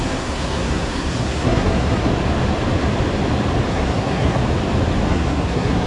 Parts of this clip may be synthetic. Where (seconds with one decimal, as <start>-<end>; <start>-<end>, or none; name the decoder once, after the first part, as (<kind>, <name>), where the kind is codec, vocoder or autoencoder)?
0.0-2.1 (codec, SNAC); 3.7-4.4; 5.1-5.9